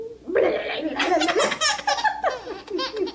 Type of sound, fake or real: real